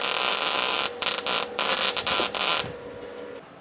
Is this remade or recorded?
recorded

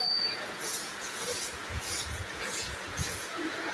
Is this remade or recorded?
remade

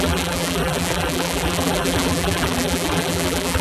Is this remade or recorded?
remade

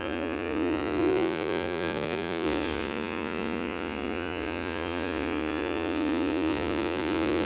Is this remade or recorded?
remade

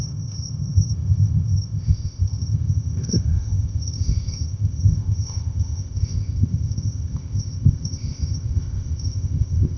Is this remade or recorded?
remade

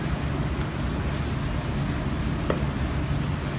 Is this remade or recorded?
recorded